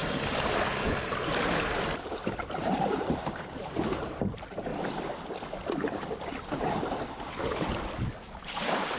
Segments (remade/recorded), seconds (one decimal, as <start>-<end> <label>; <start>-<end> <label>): 0.0-2.6 recorded; 2.6-4.7 remade; 4.7-8.4 recorded; 8.4-9.0 remade